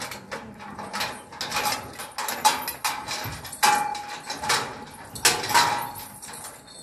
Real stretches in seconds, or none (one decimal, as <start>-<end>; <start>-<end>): 0.0-6.8